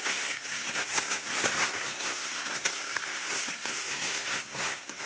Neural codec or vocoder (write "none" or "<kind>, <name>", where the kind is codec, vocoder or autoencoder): codec, SNAC